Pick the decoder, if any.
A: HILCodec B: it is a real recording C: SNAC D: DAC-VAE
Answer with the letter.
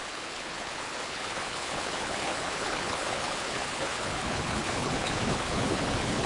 A